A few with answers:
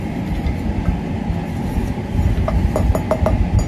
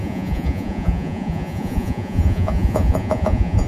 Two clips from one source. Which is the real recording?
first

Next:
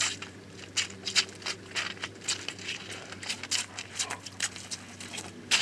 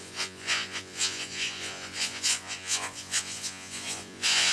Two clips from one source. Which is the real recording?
first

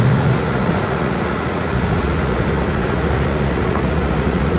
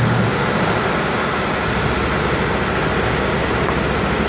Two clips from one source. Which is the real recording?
second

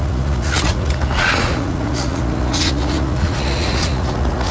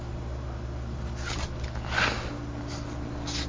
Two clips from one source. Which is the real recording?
second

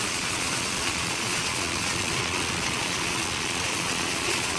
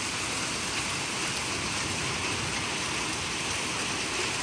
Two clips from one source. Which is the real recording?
second